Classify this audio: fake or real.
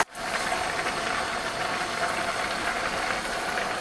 real